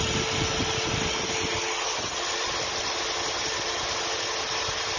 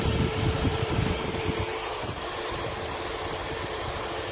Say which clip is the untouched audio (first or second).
first